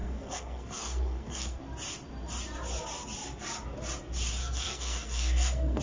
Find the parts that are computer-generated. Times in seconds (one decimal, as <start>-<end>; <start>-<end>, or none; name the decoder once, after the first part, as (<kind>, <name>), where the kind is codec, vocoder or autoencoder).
0.0-1.6 (codec, SNAC); 4.4-5.8